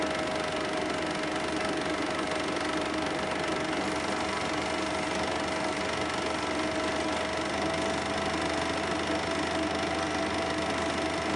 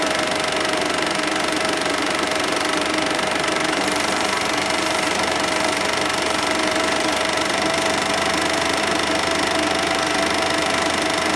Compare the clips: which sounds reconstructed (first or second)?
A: second